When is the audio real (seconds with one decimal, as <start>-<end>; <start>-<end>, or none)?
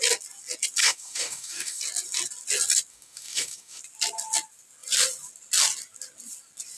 0.0-0.8; 1.8-2.9; 3.8-6.8